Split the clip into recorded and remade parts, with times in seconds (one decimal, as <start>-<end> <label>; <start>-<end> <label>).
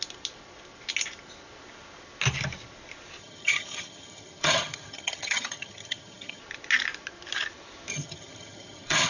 0.0-3.2 recorded; 3.2-6.4 remade; 6.4-7.9 recorded; 7.9-9.1 remade